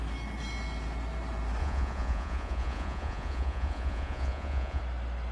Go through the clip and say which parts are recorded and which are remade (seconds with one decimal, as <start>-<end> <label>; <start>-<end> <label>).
0.0-1.6 recorded; 1.6-4.8 remade; 4.8-5.3 recorded